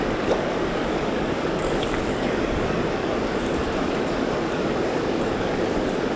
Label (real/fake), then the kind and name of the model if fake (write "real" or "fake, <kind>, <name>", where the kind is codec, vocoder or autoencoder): fake, codec, DAC